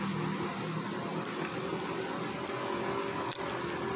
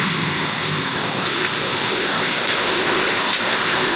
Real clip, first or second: first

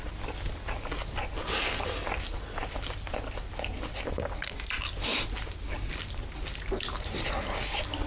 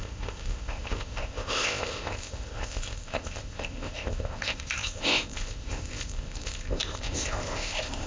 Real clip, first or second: first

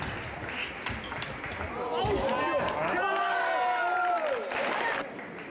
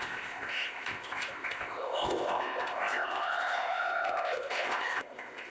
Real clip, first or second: first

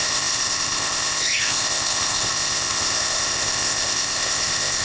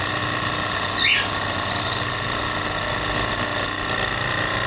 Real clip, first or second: second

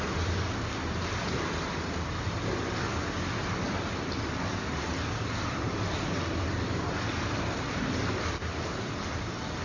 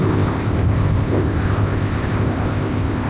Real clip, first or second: first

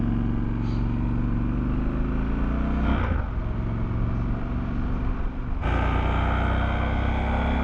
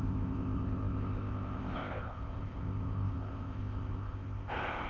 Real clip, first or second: first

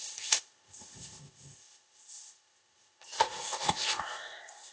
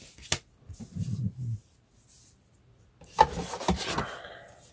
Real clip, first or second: second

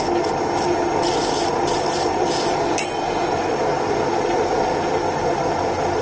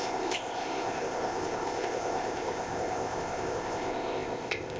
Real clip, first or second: first